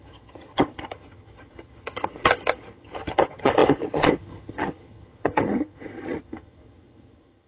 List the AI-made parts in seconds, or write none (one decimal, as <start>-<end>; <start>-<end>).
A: 0.0-7.5